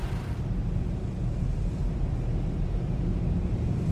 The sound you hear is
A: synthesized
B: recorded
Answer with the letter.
B